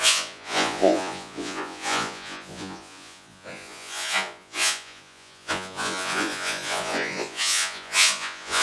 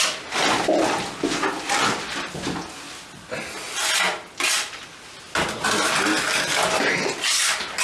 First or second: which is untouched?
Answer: second